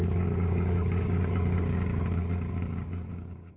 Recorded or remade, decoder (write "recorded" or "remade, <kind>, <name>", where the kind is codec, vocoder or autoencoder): remade, codec, DAC